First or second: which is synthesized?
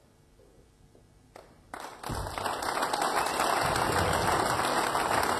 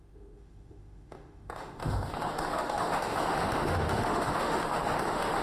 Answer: second